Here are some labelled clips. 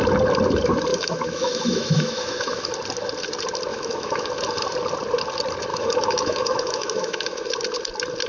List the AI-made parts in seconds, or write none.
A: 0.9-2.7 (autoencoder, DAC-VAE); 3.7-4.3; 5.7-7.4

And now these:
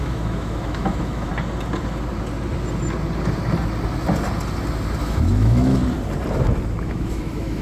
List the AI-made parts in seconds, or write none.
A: 0.0-1.3 (autoencoder, DAC-VAE); 5.0-5.8; 6.8-7.6

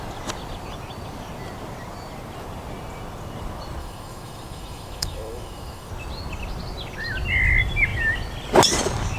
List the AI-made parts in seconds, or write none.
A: 3.8-5.9 (autoencoder, DAC-VAE)

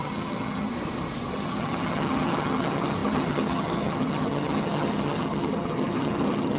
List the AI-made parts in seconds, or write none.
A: 0.0-0.7 (vocoder, HiFi-GAN); 1.3-6.6

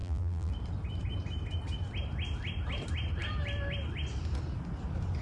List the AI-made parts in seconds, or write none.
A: 0.0-0.5 (vocoder, BigVGAN v2)

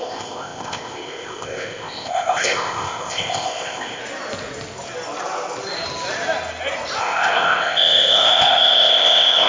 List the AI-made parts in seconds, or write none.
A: 0.0-4.0 (codec, ZipCodec); 7.0-9.5

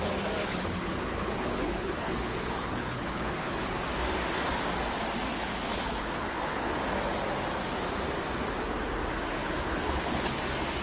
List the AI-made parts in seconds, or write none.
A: 0.4-3.7 (codec, HILCodec); 5.3-6.7; 9.3-10.4

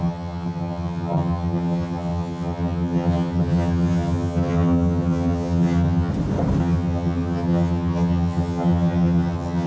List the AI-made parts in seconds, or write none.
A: 0.0-6.1 (vocoder, HiFi-GAN); 6.6-9.7